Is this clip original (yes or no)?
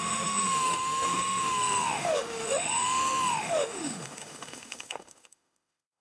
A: no